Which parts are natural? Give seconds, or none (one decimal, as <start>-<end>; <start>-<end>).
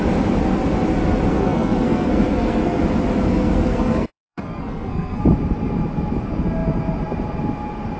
0.0-1.3; 2.8-3.3; 5.2-8.0